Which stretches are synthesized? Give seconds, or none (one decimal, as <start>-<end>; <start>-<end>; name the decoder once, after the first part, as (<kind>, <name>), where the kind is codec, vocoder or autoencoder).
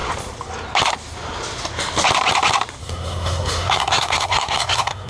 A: 2.8-5.1 (codec, SNAC)